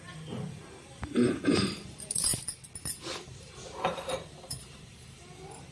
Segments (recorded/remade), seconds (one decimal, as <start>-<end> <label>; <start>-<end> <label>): 0.0-2.3 remade; 2.3-2.8 recorded; 2.8-5.7 remade